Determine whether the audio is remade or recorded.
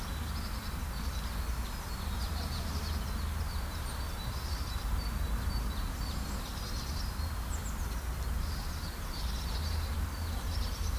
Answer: recorded